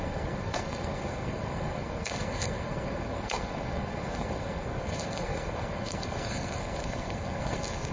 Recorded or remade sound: remade